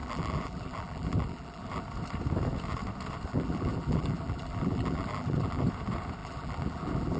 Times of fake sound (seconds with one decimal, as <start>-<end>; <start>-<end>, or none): 0.0-1.8; 3.3-5.7; 6.2-7.2